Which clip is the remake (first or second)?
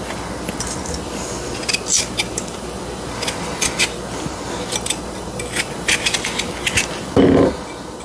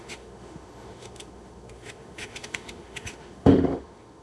second